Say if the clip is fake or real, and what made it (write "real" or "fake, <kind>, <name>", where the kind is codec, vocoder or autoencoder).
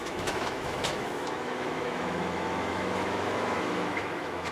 fake, autoencoder, DAC-VAE